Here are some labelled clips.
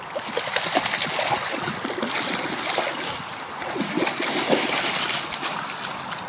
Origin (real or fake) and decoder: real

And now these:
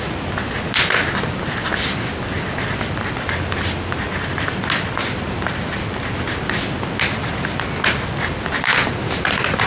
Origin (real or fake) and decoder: real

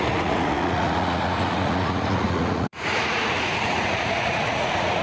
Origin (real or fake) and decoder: fake, vocoder, Vocos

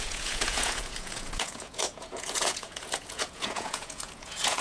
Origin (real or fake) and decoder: fake, vocoder, Vocos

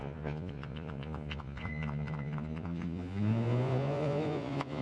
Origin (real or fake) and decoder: fake, vocoder, Vocos